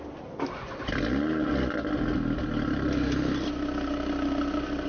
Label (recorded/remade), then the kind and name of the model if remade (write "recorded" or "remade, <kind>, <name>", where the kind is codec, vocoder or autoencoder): recorded